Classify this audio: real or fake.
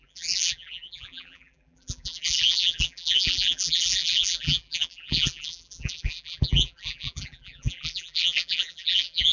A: fake